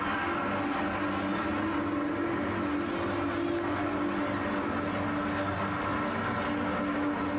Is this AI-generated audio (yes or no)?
no